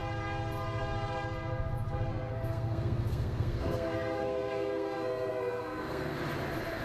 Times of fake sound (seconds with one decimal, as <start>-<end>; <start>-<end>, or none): 2.1-6.2

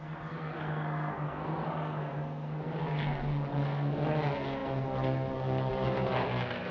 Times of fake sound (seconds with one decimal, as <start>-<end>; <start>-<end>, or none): 0.0-6.7

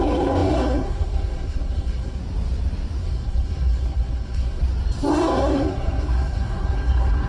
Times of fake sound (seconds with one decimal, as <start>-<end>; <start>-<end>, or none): 0.0-2.2; 3.0-4.6; 5.1-7.3

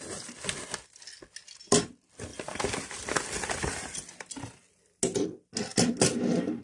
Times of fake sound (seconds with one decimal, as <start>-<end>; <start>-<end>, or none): none

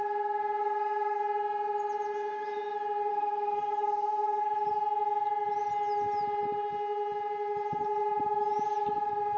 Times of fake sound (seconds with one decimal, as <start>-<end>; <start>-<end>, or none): 0.6-1.2; 3.1-4.4

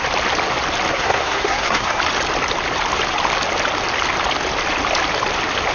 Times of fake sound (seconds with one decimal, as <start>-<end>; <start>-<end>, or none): 0.9-2.0